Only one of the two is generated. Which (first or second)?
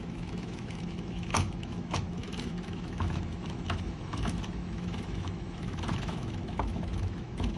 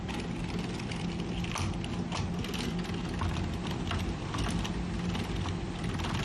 first